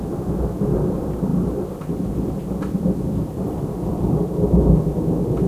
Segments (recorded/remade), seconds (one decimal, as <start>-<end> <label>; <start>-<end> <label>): 0.0-1.3 recorded; 1.3-4.2 remade; 4.2-5.5 recorded